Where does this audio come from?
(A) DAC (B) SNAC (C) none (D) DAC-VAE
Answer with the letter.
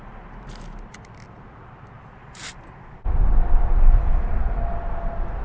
C